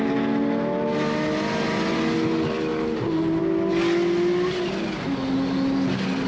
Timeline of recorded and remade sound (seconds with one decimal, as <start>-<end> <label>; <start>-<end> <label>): 0.0-6.3 recorded